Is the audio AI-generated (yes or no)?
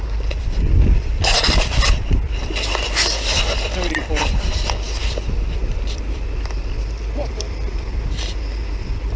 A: yes